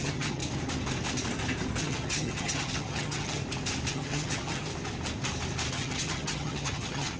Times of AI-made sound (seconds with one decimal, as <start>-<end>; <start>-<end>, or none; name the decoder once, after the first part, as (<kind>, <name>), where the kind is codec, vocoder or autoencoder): 0.0-0.4 (vocoder, HiFi-GAN); 1.8-3.4; 3.9-4.7; 5.7-7.2